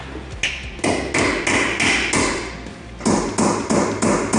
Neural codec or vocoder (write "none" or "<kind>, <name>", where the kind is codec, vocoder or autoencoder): none